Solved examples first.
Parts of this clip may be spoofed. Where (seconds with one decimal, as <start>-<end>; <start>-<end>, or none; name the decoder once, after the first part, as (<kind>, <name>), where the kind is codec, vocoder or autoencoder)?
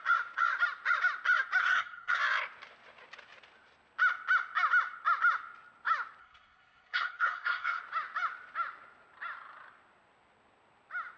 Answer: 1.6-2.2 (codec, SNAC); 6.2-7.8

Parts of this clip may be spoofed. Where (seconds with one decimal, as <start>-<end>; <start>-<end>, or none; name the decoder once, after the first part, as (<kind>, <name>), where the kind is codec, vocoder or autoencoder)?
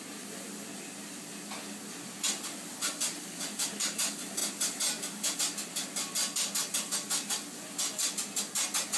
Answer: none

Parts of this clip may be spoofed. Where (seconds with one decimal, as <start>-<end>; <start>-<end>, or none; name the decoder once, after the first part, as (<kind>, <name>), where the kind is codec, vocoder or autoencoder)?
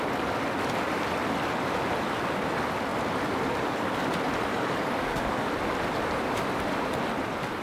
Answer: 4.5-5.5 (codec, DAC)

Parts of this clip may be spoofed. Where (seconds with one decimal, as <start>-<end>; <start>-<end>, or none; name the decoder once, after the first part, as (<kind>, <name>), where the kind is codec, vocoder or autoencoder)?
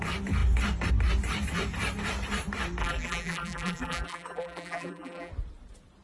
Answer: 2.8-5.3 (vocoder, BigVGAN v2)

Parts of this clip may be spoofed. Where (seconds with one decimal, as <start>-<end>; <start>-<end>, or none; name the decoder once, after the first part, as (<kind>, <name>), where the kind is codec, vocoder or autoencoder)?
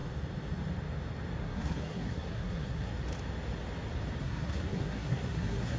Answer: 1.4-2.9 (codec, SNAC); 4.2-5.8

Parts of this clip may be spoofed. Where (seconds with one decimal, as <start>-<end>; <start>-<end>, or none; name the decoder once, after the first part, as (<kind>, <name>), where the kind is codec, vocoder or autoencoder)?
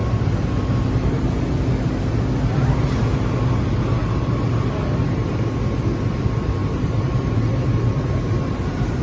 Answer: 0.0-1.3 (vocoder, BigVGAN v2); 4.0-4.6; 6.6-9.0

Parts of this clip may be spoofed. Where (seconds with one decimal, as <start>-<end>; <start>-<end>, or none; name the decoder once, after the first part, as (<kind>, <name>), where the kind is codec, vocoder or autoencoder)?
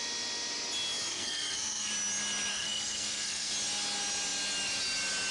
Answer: 1.1-1.9 (codec, SNAC); 2.5-3.5